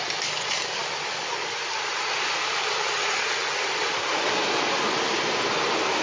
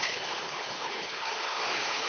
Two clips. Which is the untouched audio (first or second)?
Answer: first